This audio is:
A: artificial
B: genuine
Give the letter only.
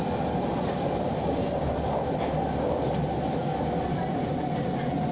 B